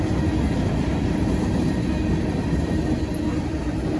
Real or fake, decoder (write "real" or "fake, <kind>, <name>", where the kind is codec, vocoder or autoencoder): real